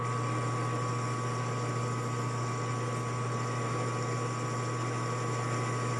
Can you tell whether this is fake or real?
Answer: real